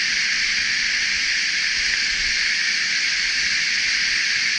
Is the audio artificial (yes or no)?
no